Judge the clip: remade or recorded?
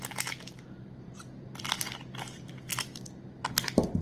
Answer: recorded